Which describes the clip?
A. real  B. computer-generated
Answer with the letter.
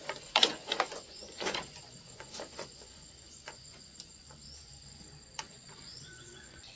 B